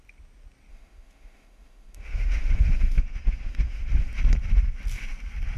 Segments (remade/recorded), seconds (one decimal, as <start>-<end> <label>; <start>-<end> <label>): 0.0-0.7 recorded; 0.7-4.1 remade; 4.1-5.6 recorded